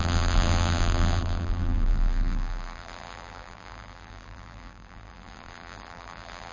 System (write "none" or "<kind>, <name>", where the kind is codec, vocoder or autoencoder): vocoder, BigVGAN v2